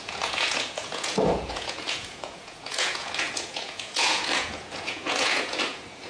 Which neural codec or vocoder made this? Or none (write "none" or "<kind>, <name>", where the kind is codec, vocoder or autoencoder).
vocoder, Vocos